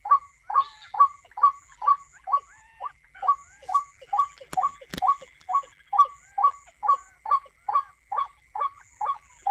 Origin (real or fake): fake